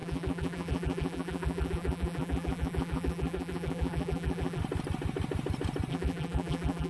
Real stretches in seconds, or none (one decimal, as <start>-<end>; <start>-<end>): 4.6-5.9